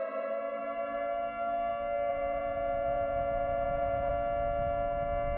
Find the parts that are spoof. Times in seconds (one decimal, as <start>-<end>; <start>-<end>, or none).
2.1-4.1